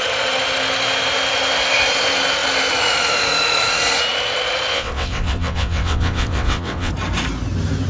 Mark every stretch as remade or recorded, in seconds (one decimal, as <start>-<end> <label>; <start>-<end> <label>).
0.0-4.7 recorded; 4.7-6.9 remade; 6.9-7.9 recorded